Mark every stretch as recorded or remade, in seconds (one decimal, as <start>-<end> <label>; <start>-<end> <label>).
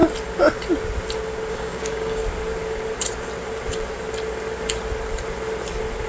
0.0-1.5 recorded; 1.5-2.2 remade; 2.2-6.1 recorded